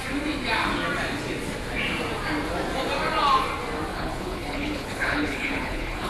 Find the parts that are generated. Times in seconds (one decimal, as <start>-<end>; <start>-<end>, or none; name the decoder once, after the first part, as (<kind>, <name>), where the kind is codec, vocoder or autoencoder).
3.9-6.1 (codec, HILCodec)